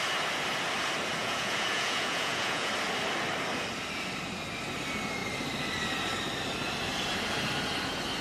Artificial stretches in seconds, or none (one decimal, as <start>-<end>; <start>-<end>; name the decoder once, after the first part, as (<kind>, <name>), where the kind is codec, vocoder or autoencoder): 1.2-2.7 (vocoder, Vocos)